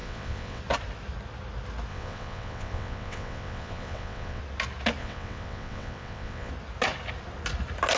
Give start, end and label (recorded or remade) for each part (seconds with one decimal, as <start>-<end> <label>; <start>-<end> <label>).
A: 0.0-0.6 remade; 0.6-1.9 recorded; 1.9-4.4 remade; 4.4-5.0 recorded; 5.0-6.5 remade; 6.5-8.0 recorded